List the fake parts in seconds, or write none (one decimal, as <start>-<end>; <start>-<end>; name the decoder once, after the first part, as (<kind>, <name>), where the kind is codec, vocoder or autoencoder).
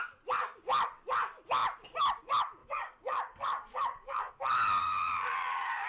2.6-4.3 (codec, DAC); 4.8-5.9